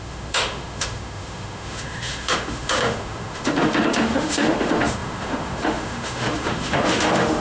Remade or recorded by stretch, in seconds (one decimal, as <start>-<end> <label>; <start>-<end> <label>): 0.0-7.4 remade